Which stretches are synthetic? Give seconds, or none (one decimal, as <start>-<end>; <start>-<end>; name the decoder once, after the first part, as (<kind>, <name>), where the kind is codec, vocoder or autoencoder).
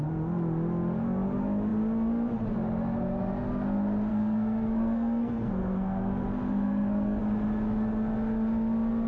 4.1-7.2 (codec, SNAC)